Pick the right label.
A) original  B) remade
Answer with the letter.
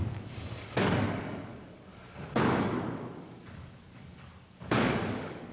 B